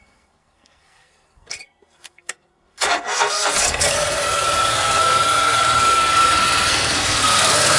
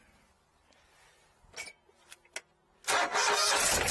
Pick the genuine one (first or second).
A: second